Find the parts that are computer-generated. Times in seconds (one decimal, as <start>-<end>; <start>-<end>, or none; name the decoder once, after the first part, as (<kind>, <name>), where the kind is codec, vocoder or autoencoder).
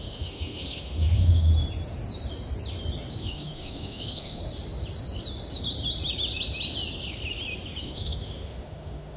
0.0-1.5 (autoencoder, DAC-VAE); 3.2-4.4; 7.8-9.2